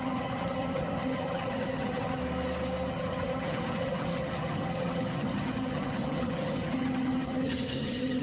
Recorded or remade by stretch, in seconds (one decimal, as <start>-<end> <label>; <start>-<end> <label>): 0.0-2.2 remade; 2.2-2.9 recorded; 2.9-8.2 remade